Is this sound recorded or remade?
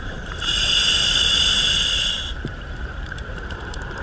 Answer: remade